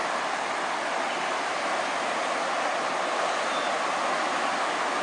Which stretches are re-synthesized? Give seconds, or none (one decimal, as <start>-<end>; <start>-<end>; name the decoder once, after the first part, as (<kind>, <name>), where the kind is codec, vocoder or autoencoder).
none